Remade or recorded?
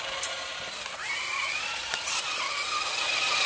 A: recorded